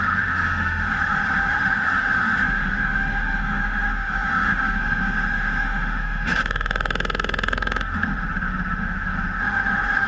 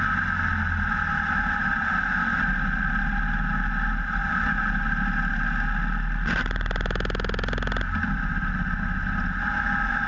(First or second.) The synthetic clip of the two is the first